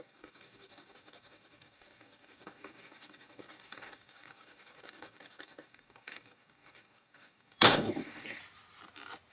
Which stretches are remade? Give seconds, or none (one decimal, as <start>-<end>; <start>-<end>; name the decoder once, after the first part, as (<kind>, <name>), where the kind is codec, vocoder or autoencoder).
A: 0.0-8.4 (codec, DAC)